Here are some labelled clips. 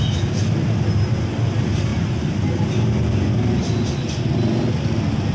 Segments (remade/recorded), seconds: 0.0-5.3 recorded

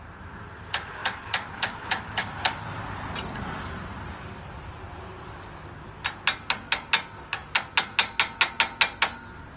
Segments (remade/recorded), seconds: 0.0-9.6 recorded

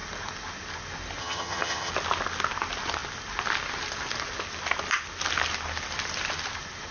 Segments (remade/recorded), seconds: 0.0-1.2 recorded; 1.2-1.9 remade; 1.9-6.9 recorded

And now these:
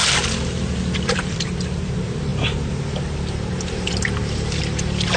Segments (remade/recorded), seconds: 0.0-1.1 recorded; 1.1-5.2 remade

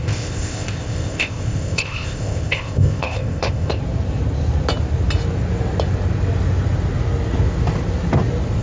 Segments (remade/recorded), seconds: 0.0-3.8 remade; 3.8-8.6 recorded